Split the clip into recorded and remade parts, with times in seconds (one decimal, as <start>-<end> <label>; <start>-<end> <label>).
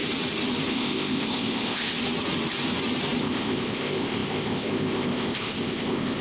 0.0-0.7 recorded; 0.7-1.9 remade; 1.9-3.2 recorded; 3.2-6.2 remade